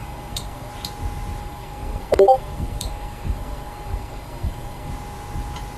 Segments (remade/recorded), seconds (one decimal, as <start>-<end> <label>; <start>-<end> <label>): 0.0-0.7 remade; 0.7-1.4 recorded; 1.4-4.9 remade; 4.9-5.8 recorded